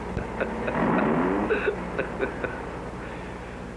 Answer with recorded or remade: recorded